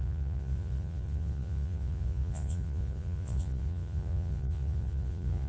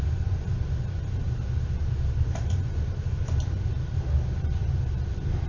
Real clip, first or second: second